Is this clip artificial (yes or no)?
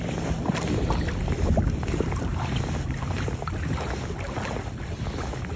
no